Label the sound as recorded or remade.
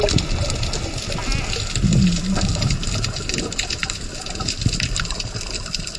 recorded